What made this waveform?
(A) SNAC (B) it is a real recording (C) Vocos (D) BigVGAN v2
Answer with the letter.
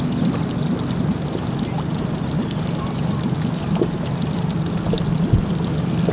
B